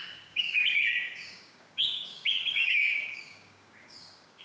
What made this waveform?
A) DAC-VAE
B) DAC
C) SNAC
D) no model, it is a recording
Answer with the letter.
B